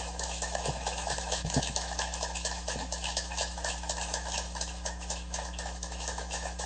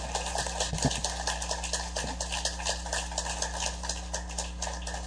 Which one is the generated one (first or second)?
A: first